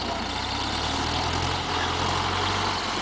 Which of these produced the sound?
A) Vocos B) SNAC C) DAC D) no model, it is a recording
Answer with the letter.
D